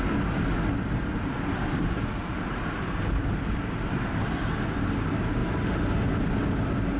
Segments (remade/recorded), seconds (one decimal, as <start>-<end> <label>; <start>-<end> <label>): 0.0-1.1 recorded; 1.1-3.3 remade; 3.3-7.0 recorded